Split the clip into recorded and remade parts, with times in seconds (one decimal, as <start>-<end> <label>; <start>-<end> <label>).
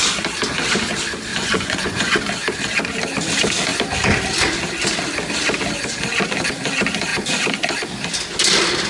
0.0-1.3 recorded; 1.3-2.2 remade; 2.2-8.9 recorded